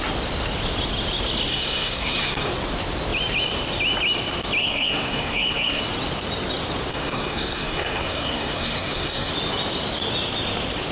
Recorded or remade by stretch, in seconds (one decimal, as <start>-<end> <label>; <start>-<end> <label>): 0.0-1.5 recorded; 1.5-2.5 remade; 2.5-4.6 recorded; 4.6-5.8 remade; 5.8-6.9 recorded; 6.9-9.3 remade; 9.3-10.9 recorded